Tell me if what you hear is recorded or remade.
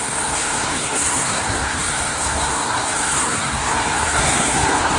remade